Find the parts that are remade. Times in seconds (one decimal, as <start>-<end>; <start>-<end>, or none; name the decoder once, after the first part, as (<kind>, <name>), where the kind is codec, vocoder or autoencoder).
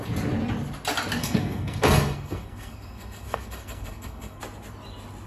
1.2-4.4 (codec, SNAC)